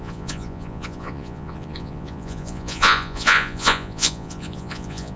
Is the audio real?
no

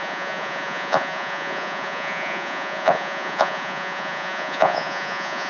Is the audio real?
no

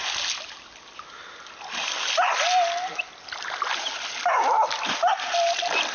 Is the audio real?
yes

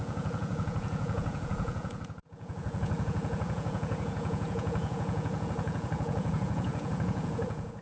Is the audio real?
no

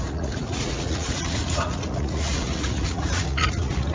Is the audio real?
no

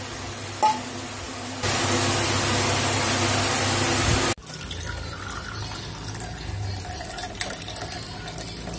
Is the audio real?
yes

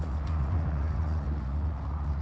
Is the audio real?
no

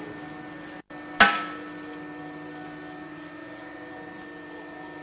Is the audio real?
yes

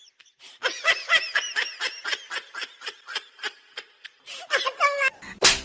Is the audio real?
yes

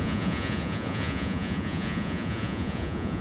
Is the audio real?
no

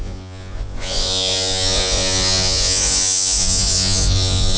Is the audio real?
no